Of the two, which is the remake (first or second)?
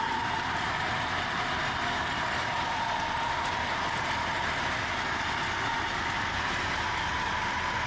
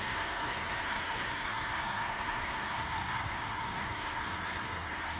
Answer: second